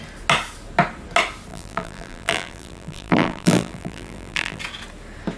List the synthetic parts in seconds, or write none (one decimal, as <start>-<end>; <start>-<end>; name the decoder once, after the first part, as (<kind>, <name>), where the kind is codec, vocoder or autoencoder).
1.5-4.6 (vocoder, BigVGAN v2)